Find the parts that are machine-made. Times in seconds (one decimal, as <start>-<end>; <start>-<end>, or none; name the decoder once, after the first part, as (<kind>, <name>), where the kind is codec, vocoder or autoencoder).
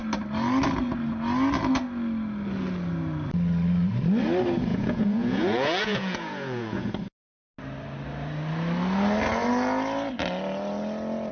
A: 4.7-6.9 (vocoder, Vocos)